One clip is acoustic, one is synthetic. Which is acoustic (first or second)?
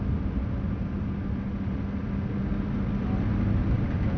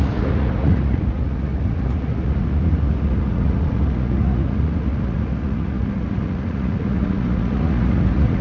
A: first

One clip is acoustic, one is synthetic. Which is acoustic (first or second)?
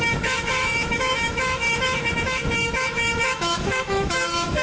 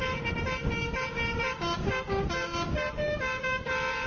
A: second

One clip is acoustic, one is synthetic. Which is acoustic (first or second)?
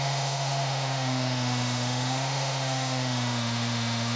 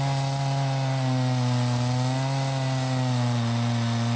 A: second